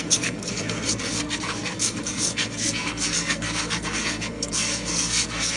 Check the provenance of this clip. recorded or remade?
remade